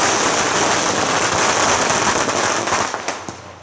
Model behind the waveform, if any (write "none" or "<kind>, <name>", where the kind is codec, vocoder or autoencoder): none